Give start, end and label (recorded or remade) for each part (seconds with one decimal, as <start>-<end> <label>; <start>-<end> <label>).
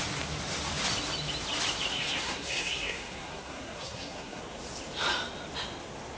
0.0-1.9 recorded; 1.9-4.4 remade; 4.4-6.2 recorded